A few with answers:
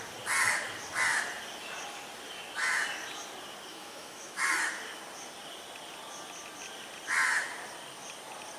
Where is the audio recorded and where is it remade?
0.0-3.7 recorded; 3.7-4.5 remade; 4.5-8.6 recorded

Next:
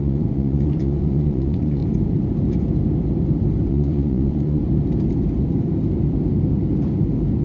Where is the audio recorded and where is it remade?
0.0-1.8 remade; 1.8-3.7 recorded; 3.7-4.6 remade; 4.6-7.4 recorded

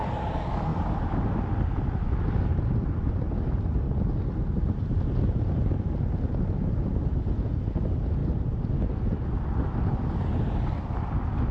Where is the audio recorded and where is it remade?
0.0-11.5 recorded

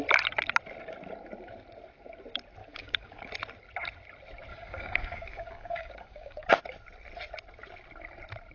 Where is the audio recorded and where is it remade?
0.0-2.6 recorded; 2.6-3.3 remade; 3.3-4.5 recorded; 4.5-6.5 remade; 6.5-8.5 recorded

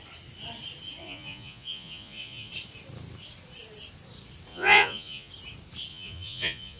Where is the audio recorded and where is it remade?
0.0-1.0 recorded; 1.0-2.5 remade; 2.5-4.5 recorded; 4.5-5.3 remade; 5.3-5.9 recorded; 5.9-6.8 remade